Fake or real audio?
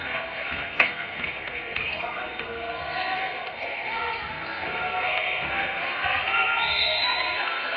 fake